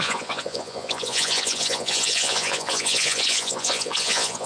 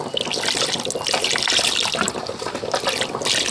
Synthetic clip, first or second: first